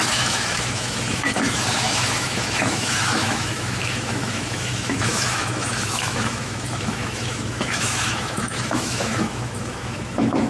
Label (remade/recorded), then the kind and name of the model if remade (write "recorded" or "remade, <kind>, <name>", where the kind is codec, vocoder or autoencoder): remade, autoencoder, DAC-VAE